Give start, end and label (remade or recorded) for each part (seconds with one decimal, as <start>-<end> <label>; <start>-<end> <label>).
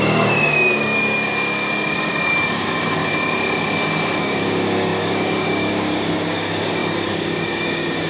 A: 0.0-3.0 remade; 3.0-4.2 recorded; 4.2-8.1 remade